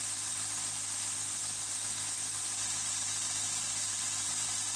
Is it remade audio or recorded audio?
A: recorded